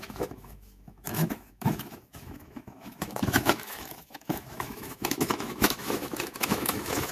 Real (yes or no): no